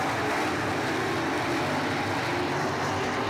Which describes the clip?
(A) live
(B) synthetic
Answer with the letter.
A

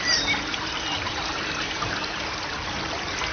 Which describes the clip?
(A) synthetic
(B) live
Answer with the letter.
B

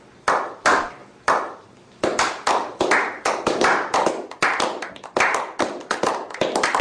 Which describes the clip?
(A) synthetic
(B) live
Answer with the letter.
A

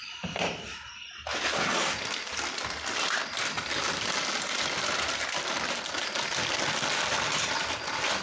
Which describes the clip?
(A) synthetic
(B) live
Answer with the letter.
A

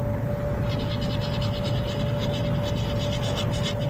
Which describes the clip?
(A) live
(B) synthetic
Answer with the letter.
A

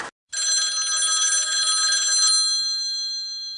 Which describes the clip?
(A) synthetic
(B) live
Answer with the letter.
B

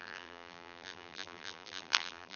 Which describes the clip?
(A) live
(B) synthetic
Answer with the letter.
B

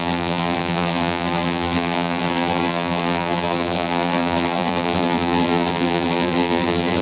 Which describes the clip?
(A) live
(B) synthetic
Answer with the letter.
B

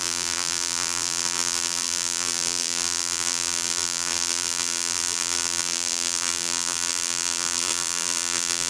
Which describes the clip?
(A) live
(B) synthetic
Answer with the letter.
B